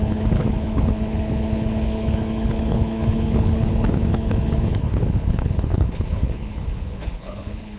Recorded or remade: remade